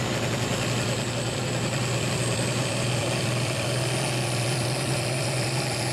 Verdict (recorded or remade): remade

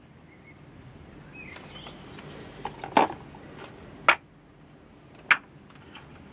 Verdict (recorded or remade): recorded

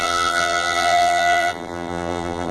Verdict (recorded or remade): remade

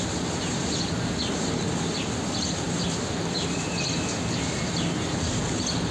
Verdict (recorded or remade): recorded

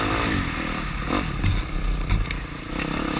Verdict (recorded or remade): remade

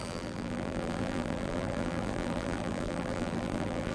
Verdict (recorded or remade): remade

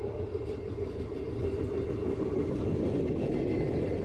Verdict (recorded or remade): recorded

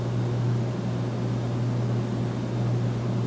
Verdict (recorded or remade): recorded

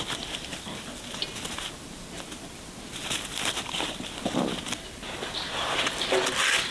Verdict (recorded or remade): recorded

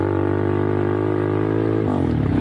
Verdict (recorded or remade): recorded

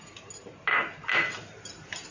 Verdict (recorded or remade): recorded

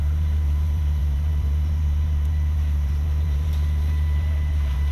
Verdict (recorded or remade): remade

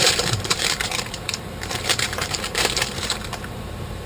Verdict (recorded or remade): remade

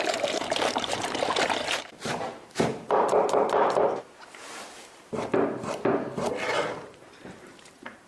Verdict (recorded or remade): remade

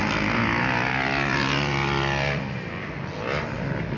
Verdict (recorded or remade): recorded